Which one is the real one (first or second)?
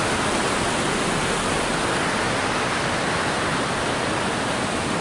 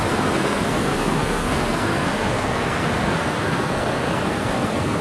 first